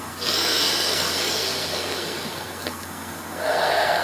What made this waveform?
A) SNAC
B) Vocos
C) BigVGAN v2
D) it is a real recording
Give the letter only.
A